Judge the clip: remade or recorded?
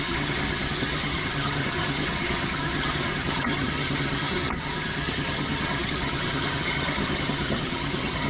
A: remade